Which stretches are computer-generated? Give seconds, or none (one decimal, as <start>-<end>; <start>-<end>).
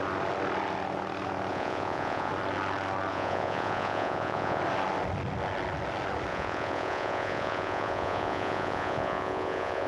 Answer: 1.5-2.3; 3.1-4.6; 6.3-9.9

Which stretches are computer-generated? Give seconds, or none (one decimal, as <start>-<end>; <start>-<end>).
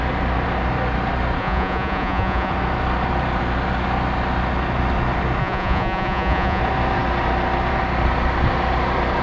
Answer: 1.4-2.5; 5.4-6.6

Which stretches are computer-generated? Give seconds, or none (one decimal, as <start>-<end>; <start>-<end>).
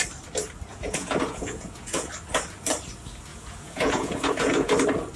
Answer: 0.7-2.1; 3.3-4.7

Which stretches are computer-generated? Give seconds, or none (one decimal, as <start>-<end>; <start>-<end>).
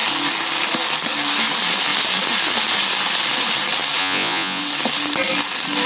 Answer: 4.0-4.6